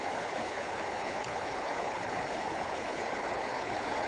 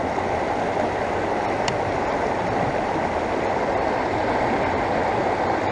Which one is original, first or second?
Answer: second